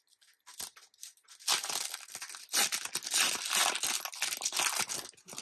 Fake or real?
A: real